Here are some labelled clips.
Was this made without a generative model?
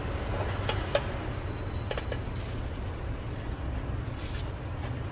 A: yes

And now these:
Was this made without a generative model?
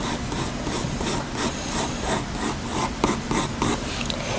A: yes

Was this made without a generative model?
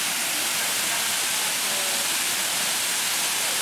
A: yes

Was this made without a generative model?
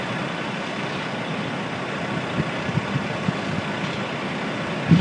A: yes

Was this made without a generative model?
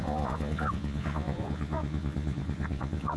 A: no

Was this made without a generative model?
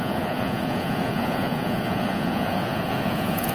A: no